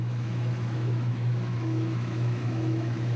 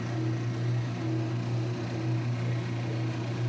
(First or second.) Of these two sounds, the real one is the second